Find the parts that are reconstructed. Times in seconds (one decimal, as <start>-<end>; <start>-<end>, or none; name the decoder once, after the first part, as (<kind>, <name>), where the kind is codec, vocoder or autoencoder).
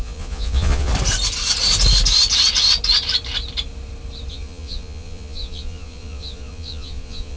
0.0-0.9 (vocoder, Vocos); 4.3-7.4